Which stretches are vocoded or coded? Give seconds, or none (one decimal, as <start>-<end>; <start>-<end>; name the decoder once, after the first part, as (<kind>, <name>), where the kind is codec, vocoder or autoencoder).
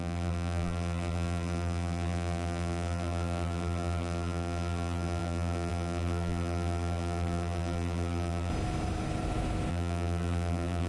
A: 0.0-8.5 (vocoder, BigVGAN v2); 9.7-10.9